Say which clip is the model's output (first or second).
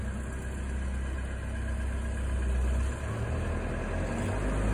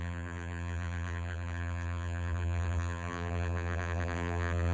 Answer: second